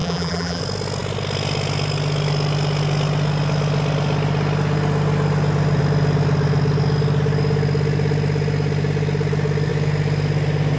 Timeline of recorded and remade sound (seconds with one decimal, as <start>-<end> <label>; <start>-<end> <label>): 0.0-0.6 remade; 0.6-10.8 recorded